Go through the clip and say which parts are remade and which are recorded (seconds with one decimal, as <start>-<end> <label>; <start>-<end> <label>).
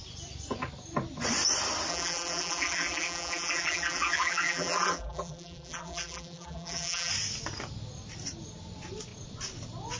0.0-1.9 recorded; 1.9-7.1 remade; 7.1-10.0 recorded